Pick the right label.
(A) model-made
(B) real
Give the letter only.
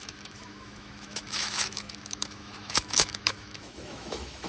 A